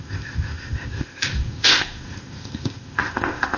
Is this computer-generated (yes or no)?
yes